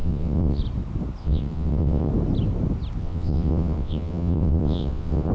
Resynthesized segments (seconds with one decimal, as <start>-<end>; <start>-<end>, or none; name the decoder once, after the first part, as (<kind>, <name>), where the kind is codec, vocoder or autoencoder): 0.0-0.6 (vocoder, WaveNeXt); 1.2-2.1; 3.0-5.3